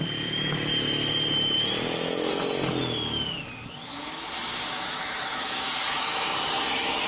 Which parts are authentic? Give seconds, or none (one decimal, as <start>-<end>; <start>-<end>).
0.0-3.9